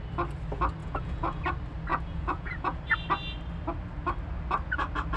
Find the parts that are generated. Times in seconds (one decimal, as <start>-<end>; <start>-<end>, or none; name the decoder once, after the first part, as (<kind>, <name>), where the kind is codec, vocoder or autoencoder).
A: 0.8-1.4 (vocoder, Vocos); 1.9-2.8